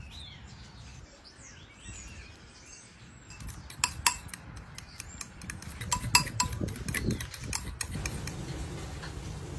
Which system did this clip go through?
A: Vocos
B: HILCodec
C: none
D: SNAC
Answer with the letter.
C